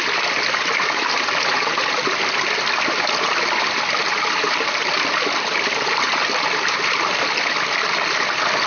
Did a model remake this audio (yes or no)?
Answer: no